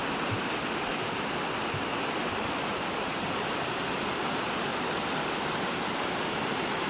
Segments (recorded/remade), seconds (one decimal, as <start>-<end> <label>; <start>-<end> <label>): 0.0-4.7 recorded; 4.7-5.6 remade; 5.6-6.9 recorded